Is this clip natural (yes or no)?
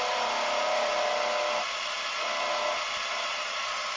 yes